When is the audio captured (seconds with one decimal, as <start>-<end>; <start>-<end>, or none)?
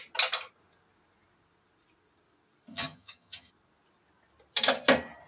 0.0-2.7; 3.5-5.3